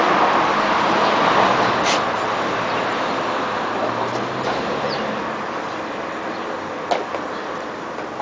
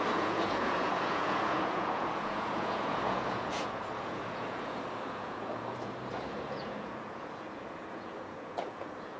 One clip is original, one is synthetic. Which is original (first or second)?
first